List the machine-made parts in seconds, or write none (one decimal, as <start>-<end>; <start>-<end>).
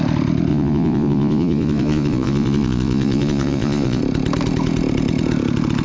0.5-4.0